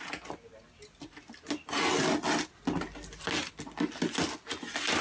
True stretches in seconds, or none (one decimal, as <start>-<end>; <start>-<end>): 0.0-5.0